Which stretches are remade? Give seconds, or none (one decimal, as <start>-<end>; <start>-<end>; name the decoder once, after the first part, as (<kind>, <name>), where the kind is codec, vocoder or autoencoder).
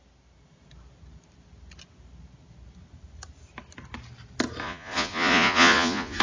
4.6-6.2 (vocoder, Vocos)